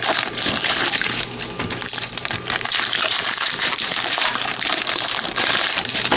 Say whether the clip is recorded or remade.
remade